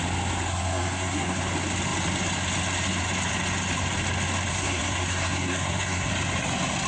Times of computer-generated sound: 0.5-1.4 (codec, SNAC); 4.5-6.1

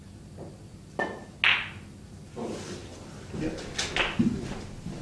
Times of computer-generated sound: none

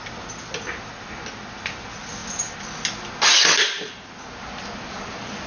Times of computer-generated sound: none

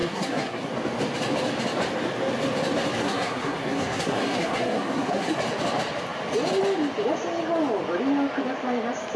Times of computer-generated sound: 0.0-0.7 (codec, SNAC); 3.0-5.3

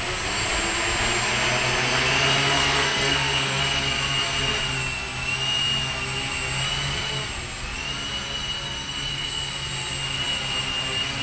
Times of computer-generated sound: 2.6-3.6 (codec, SNAC)